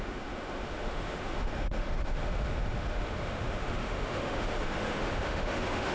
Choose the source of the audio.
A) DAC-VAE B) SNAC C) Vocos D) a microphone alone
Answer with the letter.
A